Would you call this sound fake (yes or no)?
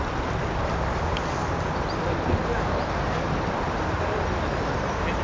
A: no